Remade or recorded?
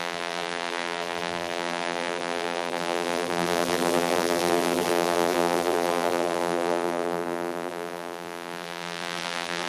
remade